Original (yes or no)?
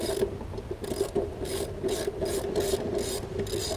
yes